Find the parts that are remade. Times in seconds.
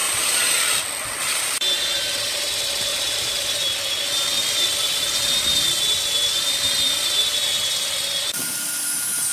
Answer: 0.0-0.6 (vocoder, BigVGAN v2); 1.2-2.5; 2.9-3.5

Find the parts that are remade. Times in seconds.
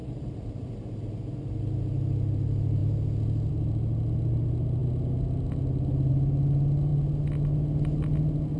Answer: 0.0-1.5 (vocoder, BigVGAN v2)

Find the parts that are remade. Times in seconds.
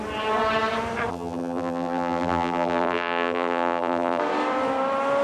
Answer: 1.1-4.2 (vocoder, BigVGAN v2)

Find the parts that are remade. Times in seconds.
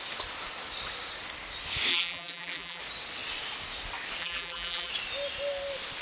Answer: 1.9-2.8 (vocoder, BigVGAN v2); 4.2-4.9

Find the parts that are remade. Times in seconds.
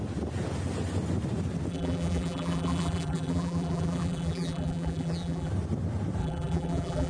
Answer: 1.7-5.5 (vocoder, BigVGAN v2); 6.2-7.1